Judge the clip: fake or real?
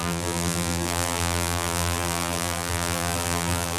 fake